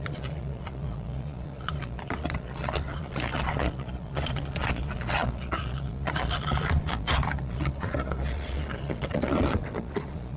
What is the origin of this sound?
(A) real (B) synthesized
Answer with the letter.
B